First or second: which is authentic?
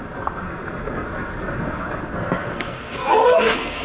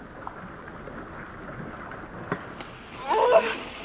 second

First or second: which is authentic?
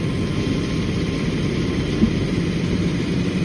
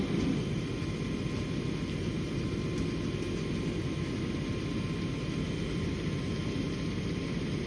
second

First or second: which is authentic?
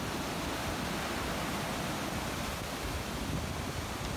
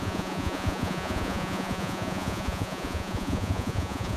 first